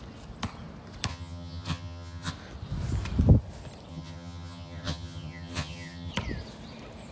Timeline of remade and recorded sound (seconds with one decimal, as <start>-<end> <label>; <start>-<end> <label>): 0.0-1.1 recorded; 1.1-2.3 remade; 2.3-3.9 recorded; 3.9-6.1 remade; 6.1-7.1 recorded